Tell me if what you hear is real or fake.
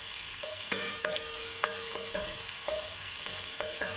fake